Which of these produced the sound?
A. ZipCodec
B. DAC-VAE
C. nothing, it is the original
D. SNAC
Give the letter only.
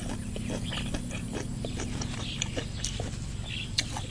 C